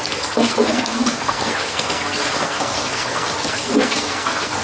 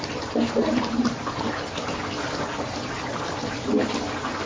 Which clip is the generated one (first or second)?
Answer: first